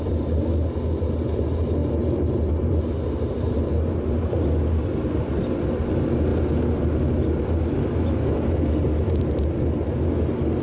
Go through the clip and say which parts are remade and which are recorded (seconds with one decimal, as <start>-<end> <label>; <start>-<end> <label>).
0.0-10.6 recorded